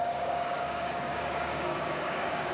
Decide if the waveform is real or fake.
fake